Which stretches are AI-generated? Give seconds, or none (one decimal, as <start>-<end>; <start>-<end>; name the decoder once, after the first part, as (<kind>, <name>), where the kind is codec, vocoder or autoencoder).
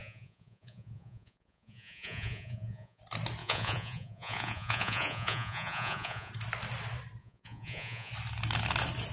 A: 0.0-3.0 (vocoder, Vocos); 3.4-6.3; 7.2-8.1